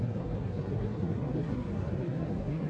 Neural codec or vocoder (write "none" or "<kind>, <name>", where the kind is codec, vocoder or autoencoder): codec, SNAC